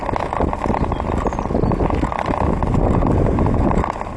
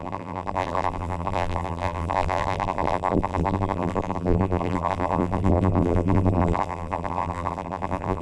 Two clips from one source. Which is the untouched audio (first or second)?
first